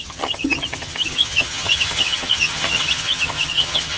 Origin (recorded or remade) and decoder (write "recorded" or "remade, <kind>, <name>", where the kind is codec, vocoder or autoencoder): remade, vocoder, HiFi-GAN